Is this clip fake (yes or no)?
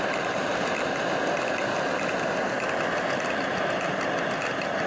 no